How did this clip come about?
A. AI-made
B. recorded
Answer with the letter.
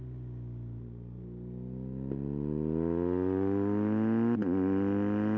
B